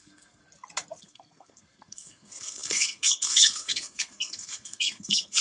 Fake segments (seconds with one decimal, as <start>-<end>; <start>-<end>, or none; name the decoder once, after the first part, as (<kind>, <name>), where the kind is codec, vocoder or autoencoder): 0.0-0.4 (codec, SNAC); 1.0-5.4